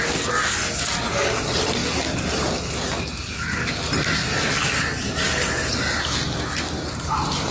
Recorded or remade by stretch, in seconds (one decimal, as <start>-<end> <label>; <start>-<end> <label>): 0.0-7.5 recorded